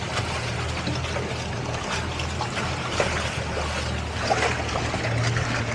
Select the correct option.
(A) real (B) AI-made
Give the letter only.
A